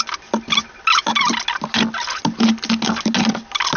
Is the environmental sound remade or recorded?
recorded